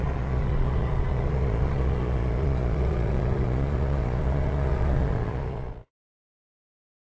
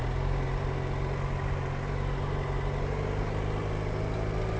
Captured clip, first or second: second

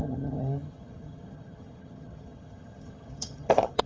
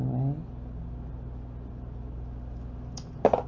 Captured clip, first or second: second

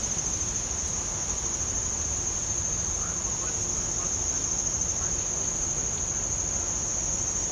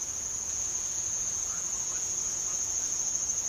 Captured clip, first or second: first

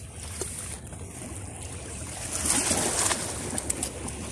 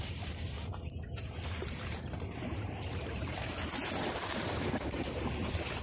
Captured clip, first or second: first